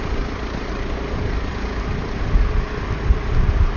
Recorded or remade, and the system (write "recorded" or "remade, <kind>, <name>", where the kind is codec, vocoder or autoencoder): recorded